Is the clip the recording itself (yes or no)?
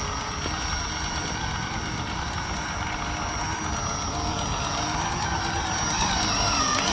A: yes